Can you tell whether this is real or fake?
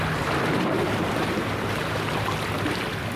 real